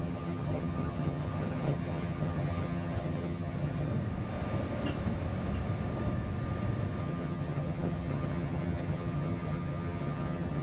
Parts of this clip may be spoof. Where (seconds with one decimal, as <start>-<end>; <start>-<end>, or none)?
0.0-3.9; 7.0-10.6